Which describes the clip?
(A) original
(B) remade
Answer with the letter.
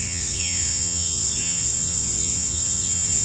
B